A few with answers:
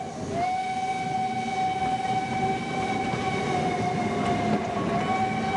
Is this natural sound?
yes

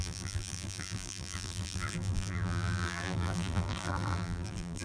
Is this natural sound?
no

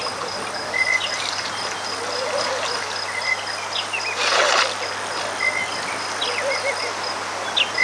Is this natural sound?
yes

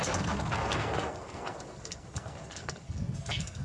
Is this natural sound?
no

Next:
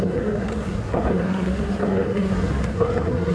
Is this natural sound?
no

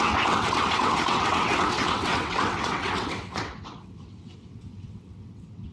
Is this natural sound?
no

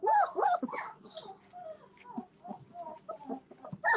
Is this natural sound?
yes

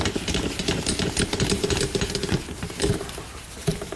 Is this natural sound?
no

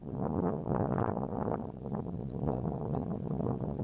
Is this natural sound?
no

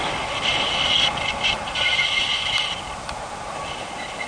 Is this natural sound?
yes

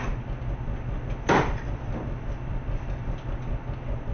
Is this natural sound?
yes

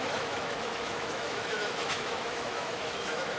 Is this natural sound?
no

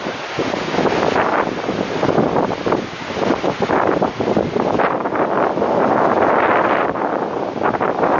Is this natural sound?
yes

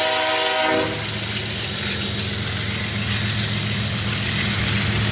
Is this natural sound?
yes